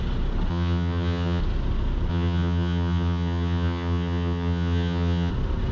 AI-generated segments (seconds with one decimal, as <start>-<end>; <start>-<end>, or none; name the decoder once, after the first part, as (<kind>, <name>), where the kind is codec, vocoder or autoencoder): 0.5-1.4 (vocoder, HiFi-GAN); 2.1-5.3